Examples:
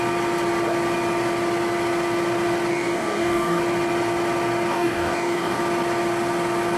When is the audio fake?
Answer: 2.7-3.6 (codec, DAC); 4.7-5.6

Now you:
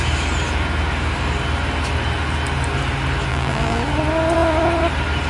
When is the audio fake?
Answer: 3.3-3.8 (vocoder, BigVGAN v2)

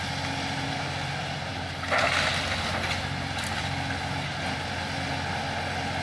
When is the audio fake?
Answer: none

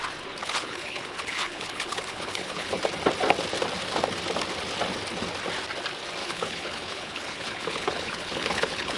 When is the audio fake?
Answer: 0.4-2.8 (codec, HILCodec); 6.2-9.0

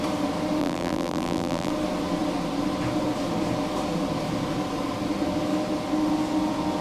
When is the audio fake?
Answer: 0.6-1.7 (vocoder, BigVGAN v2)

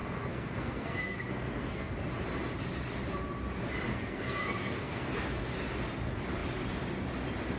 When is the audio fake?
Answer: 0.0-1.9 (codec, SNAC); 3.9-5.5

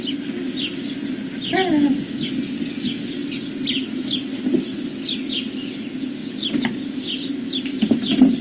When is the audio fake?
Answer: none

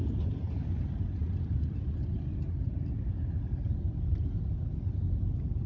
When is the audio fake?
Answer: none